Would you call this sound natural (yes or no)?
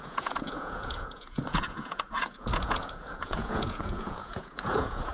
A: no